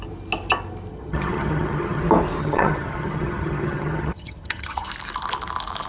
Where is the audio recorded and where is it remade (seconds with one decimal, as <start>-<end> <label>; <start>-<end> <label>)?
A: 0.0-0.9 recorded; 0.9-2.0 remade; 2.0-2.4 recorded; 2.4-4.9 remade; 4.9-5.9 recorded